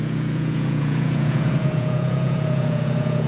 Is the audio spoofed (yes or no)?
yes